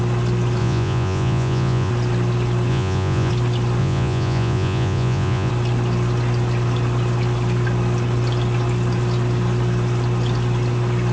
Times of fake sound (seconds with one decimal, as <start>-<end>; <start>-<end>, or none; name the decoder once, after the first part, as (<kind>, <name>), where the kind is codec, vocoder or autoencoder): 0.6-1.9 (vocoder, Vocos); 2.7-3.3; 3.8-5.5